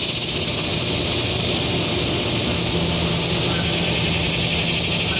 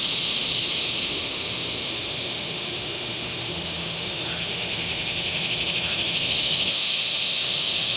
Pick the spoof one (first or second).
second